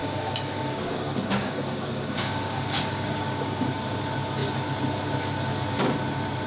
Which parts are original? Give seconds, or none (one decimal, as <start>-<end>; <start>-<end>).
3.9-6.5